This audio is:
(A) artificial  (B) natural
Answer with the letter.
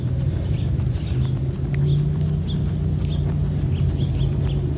B